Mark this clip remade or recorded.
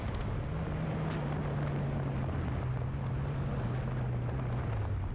recorded